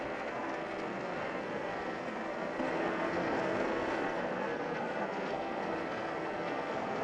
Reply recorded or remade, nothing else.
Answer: remade